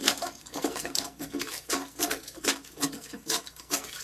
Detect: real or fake fake